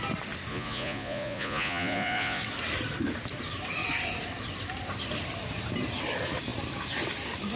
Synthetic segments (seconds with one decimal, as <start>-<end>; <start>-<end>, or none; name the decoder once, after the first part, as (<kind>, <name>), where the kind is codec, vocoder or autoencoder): 0.5-2.4 (vocoder, Vocos)